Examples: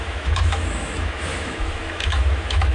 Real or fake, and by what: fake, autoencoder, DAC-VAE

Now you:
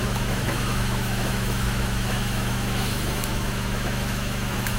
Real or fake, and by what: fake, autoencoder, DAC-VAE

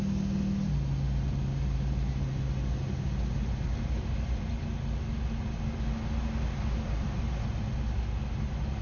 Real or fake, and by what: real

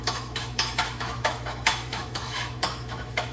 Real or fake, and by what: fake, autoencoder, DAC-VAE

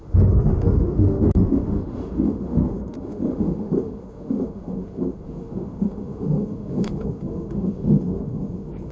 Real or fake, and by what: fake, autoencoder, DAC-VAE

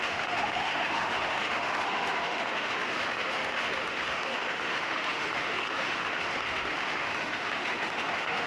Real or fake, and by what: fake, autoencoder, DAC-VAE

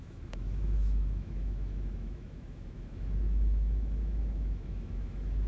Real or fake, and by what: fake, autoencoder, DAC-VAE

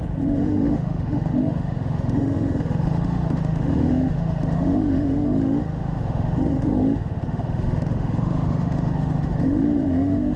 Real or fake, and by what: fake, autoencoder, DAC-VAE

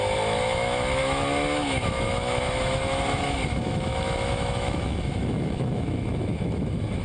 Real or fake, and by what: fake, autoencoder, DAC-VAE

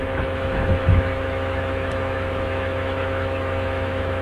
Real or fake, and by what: fake, autoencoder, DAC-VAE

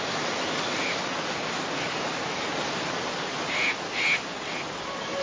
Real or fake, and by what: real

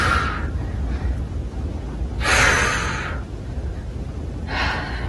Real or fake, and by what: real